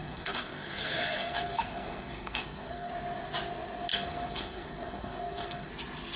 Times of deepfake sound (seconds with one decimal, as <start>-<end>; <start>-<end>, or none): 0.0-2.9; 3.9-5.7